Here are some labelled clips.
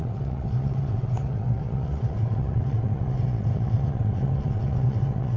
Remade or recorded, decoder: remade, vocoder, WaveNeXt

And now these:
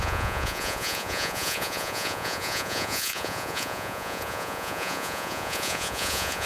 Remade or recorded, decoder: remade, vocoder, Vocos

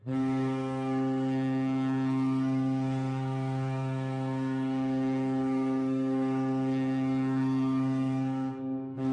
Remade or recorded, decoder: remade, codec, SNAC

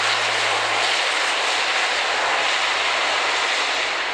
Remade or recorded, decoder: recorded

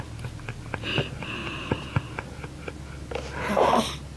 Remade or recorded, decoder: recorded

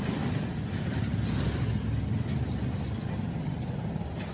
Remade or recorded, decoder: recorded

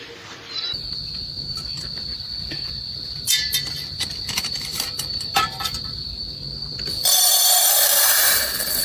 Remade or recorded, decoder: remade, vocoder, BigVGAN v2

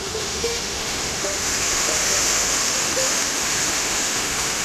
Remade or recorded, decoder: remade, autoencoder, DAC-VAE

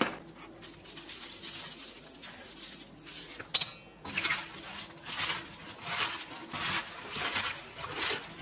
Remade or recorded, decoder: recorded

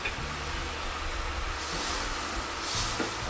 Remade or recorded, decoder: recorded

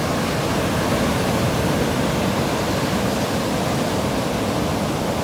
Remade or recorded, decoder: recorded